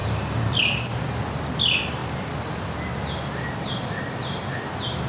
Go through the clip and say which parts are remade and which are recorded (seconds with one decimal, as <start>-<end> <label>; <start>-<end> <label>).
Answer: 0.0-0.6 remade; 0.6-5.1 recorded